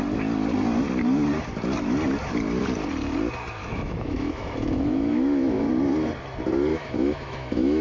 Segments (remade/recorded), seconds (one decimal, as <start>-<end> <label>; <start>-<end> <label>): 0.0-3.6 recorded; 3.6-5.7 remade; 5.7-6.7 recorded; 6.7-7.8 remade